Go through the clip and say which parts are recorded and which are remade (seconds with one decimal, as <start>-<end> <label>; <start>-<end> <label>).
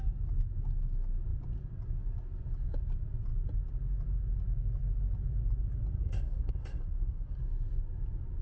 0.0-6.0 recorded; 6.0-7.4 remade; 7.4-8.4 recorded